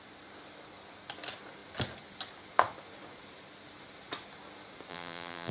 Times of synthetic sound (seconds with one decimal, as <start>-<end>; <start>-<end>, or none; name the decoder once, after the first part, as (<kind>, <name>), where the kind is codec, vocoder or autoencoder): 4.9-5.5 (vocoder, BigVGAN v2)